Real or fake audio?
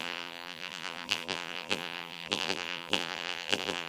fake